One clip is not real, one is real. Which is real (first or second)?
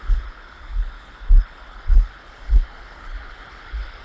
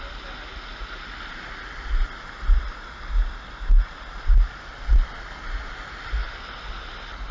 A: second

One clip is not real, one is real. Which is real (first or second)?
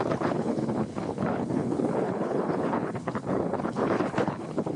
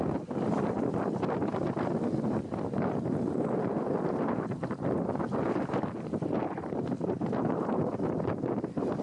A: second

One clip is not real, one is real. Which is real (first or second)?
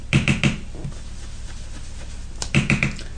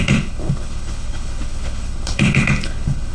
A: first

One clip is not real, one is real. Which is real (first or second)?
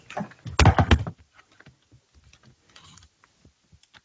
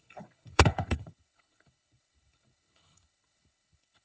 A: first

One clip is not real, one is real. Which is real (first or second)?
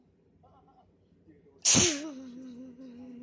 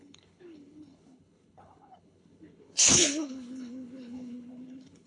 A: first